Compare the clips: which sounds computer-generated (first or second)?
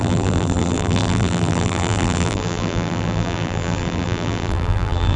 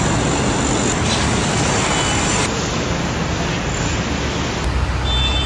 first